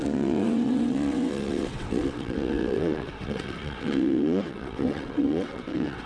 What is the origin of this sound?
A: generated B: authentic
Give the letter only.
A